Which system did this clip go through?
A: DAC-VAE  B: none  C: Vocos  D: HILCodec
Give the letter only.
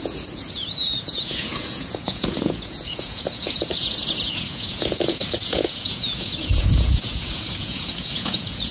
C